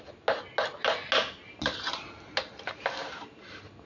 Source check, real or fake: real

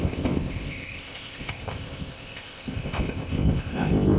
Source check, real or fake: fake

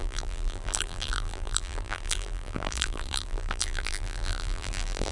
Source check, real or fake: fake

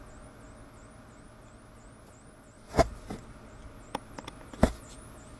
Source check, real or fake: real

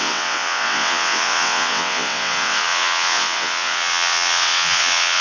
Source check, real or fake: fake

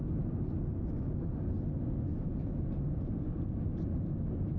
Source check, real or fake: real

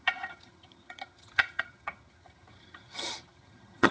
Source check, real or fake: fake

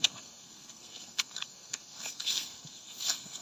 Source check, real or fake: fake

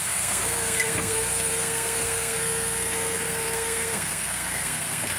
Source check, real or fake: fake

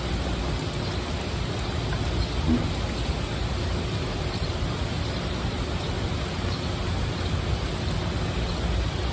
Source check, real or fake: real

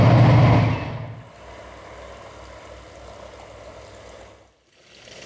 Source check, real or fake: real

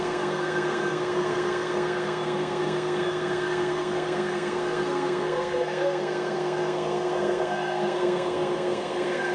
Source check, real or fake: fake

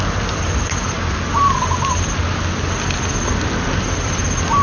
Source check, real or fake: real